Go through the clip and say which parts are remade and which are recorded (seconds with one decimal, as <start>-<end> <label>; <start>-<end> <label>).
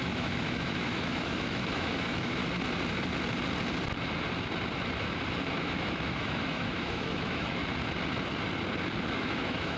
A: 0.0-2.4 remade; 2.4-5.6 recorded; 5.6-7.6 remade; 7.6-9.0 recorded; 9.0-9.8 remade